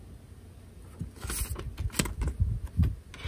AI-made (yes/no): no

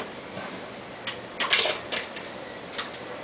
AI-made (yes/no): no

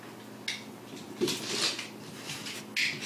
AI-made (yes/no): no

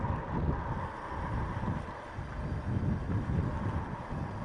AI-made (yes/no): no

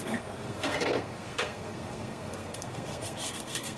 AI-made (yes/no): yes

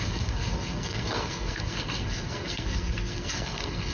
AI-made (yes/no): yes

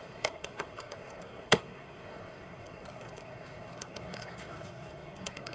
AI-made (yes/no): yes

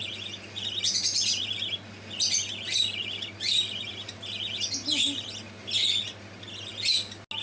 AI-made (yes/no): no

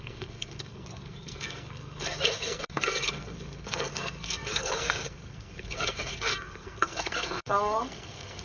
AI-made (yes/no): yes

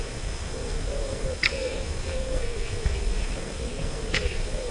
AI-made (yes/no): yes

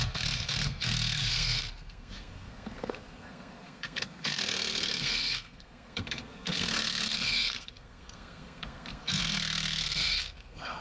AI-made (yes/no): yes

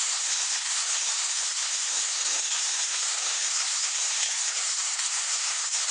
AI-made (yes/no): yes